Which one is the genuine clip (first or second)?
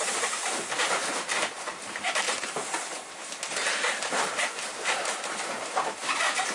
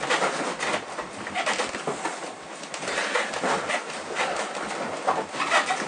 second